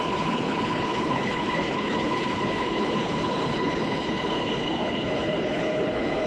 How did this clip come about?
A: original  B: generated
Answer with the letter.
B